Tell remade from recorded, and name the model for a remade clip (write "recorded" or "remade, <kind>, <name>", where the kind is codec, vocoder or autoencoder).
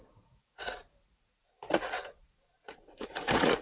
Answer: remade, vocoder, Vocos